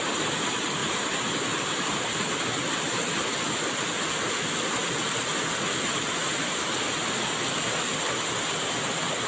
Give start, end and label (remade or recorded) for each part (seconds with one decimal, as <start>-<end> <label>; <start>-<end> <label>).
0.0-9.3 recorded